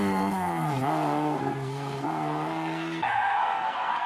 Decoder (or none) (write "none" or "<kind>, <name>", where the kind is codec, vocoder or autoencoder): codec, SNAC